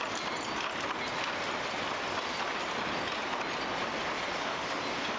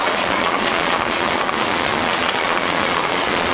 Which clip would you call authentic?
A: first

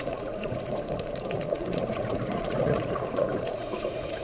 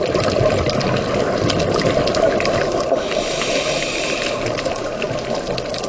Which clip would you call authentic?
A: second